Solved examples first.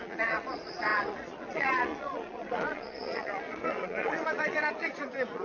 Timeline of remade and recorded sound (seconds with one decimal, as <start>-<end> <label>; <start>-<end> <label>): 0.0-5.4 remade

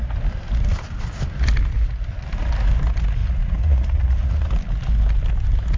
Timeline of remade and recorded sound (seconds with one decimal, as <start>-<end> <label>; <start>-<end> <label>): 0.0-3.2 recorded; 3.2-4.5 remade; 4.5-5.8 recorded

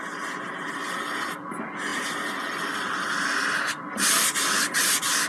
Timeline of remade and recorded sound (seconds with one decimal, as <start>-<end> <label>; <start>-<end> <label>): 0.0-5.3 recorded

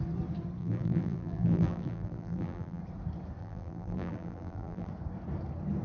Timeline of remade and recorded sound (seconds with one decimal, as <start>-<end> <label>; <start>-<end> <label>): 0.0-0.6 recorded; 0.6-2.8 remade; 2.8-3.4 recorded; 3.4-4.9 remade; 4.9-5.8 recorded

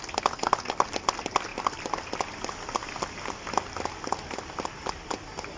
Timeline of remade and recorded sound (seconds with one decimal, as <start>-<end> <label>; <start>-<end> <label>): 0.0-5.6 recorded

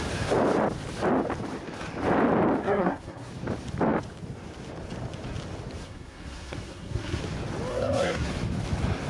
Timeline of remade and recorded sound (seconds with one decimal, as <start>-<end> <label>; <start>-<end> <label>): 0.0-2.6 recorded; 2.6-3.3 remade; 3.3-5.8 recorded; 5.8-7.2 remade; 7.2-7.7 recorded; 7.7-8.3 remade; 8.3-9.1 recorded

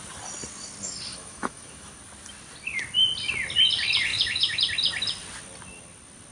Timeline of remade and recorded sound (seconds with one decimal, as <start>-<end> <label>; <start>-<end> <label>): 0.0-1.1 recorded; 1.1-2.0 remade; 2.0-4.1 recorded; 4.1-4.6 remade; 4.6-6.3 recorded